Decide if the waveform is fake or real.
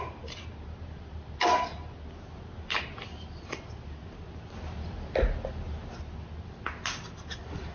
real